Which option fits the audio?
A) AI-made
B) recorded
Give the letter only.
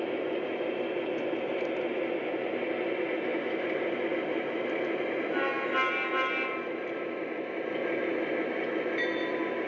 B